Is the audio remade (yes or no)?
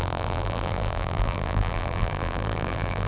yes